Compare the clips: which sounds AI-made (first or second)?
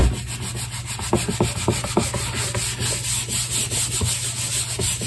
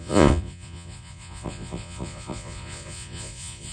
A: second